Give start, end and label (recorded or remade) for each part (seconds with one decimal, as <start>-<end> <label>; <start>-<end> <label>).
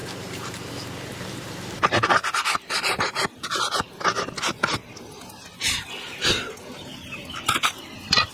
0.0-3.6 remade; 3.6-8.3 recorded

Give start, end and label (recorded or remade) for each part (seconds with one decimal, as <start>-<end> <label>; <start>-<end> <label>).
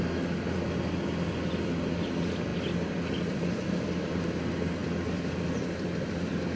0.0-6.6 recorded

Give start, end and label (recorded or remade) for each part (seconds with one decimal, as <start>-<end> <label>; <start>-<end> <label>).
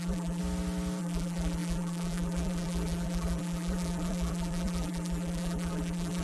0.0-0.4 remade; 0.4-1.0 recorded; 1.0-6.2 remade